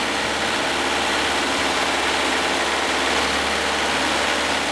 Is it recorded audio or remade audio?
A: recorded